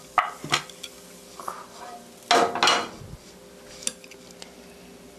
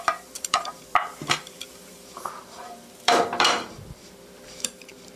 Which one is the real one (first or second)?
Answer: first